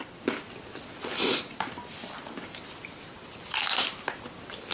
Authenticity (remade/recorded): remade